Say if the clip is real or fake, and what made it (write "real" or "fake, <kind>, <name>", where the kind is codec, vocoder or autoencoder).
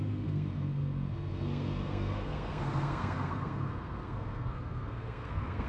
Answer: fake, codec, SNAC